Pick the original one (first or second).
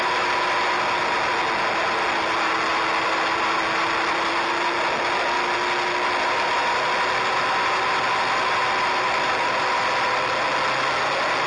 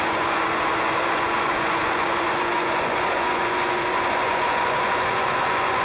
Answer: first